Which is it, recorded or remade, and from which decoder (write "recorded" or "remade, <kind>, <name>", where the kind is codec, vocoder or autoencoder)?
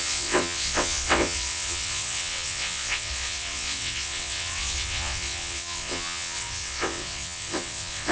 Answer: remade, vocoder, WaveNeXt